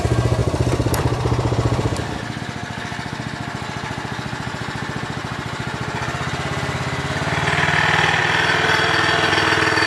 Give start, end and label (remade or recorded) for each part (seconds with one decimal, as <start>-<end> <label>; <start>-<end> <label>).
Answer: 0.0-0.4 recorded; 0.4-2.4 remade; 2.4-5.2 recorded; 5.2-5.9 remade; 5.9-9.9 recorded